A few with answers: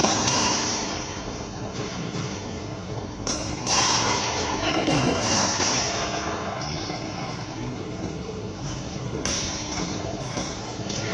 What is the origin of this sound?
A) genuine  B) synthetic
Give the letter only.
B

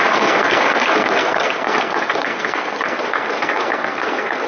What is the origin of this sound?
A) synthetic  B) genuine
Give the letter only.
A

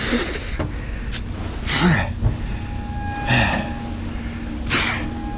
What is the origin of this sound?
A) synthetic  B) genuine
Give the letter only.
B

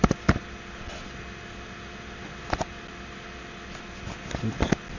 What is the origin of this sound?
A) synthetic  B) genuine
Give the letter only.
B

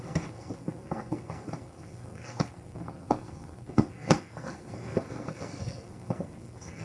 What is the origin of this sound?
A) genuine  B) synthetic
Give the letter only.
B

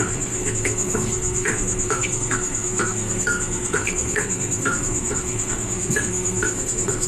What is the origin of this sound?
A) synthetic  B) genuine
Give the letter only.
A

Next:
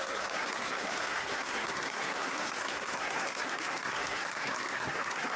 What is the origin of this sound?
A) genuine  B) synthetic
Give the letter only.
B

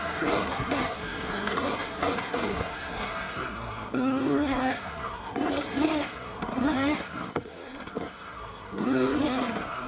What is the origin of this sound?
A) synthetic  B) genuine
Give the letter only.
A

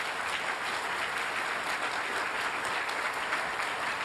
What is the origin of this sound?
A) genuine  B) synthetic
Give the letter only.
A